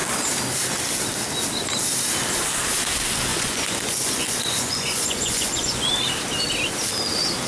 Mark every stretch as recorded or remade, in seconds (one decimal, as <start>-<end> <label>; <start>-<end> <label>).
0.0-3.3 recorded; 3.3-5.9 remade; 5.9-7.5 recorded